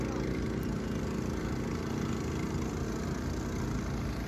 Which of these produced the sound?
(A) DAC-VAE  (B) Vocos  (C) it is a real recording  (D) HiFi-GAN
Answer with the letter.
C